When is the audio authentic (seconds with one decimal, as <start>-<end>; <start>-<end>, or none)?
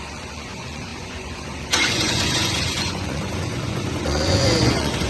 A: none